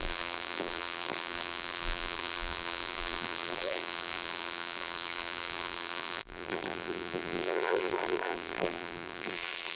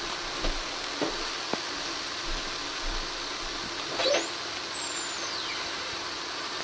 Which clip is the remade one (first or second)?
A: first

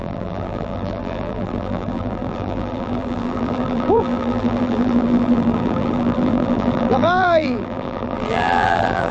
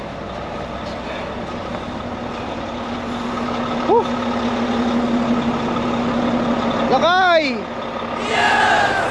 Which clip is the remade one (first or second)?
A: first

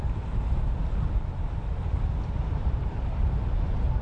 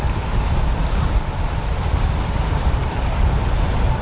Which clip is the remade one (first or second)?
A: second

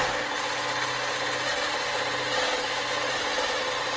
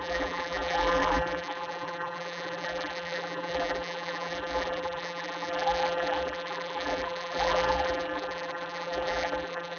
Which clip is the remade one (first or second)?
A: second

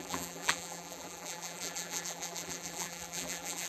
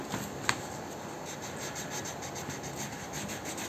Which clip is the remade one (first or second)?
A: first